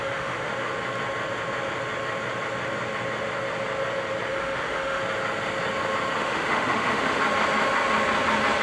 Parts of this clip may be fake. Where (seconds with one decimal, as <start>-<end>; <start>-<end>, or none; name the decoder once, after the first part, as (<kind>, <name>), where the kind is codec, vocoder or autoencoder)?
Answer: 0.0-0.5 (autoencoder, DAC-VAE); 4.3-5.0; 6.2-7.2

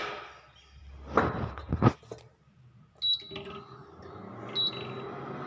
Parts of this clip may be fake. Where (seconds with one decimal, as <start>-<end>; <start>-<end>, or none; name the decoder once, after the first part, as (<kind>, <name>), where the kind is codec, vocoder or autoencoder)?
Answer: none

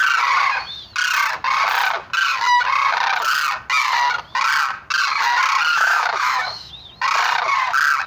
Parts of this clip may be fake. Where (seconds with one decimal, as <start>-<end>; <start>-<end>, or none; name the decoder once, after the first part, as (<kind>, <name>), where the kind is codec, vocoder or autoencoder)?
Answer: 5.7-6.7 (autoencoder, DAC-VAE)

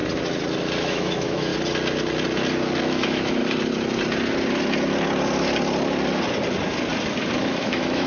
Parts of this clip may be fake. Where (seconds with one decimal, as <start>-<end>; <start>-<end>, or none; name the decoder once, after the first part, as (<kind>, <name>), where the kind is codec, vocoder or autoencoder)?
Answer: 0.8-1.5 (autoencoder, DAC-VAE); 2.8-3.4; 7.4-8.1

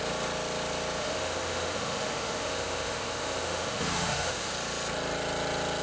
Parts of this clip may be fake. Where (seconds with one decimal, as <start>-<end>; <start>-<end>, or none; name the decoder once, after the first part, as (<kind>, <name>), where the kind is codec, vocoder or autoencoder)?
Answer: 1.0-4.5 (autoencoder, DAC-VAE)

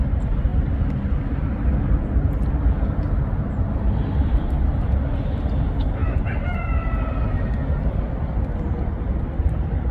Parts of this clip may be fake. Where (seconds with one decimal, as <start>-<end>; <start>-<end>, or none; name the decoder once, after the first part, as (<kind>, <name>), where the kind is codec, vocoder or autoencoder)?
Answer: none